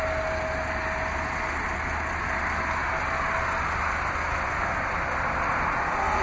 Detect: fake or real real